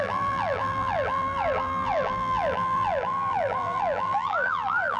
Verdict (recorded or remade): remade